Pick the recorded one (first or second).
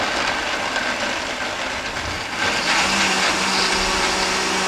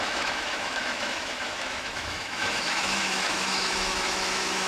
first